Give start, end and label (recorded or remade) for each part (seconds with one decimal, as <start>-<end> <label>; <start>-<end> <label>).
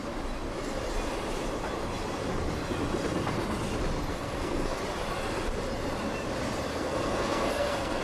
0.0-4.1 recorded; 4.1-4.8 remade; 4.8-6.7 recorded; 6.7-8.0 remade